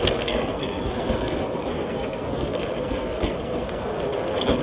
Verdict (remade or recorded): remade